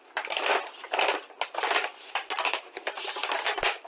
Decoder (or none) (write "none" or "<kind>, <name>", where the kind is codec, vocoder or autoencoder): none